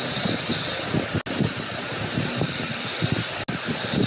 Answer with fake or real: real